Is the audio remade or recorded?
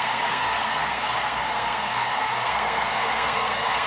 remade